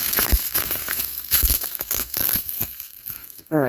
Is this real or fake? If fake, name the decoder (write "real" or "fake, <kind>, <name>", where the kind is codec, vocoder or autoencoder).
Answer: fake, codec, SNAC